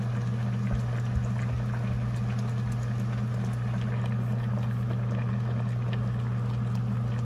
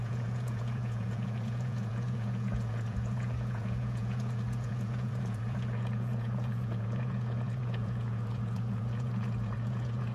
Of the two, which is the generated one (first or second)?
second